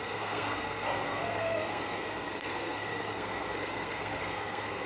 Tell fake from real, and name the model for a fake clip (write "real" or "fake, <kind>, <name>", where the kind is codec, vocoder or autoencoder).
fake, codec, SNAC